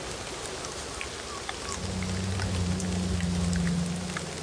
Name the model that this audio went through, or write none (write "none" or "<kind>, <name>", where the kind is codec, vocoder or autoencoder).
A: none